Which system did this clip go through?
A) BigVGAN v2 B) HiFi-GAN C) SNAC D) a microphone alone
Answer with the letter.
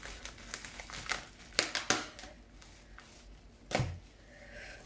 D